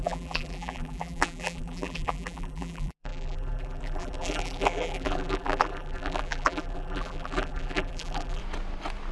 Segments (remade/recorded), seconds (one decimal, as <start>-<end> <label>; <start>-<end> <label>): 0.0-8.4 remade; 8.4-9.1 recorded